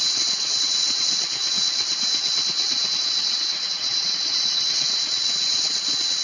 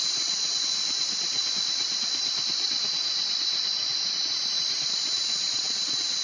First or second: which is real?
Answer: second